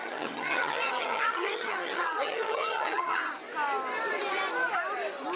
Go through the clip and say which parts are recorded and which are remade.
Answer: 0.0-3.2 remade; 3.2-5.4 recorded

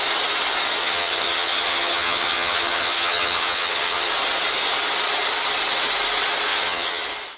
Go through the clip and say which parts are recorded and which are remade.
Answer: 0.0-0.8 recorded; 0.8-4.1 remade; 4.1-6.5 recorded; 6.5-7.0 remade; 7.0-7.4 recorded